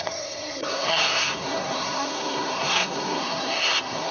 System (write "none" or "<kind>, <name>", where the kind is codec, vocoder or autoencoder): codec, SNAC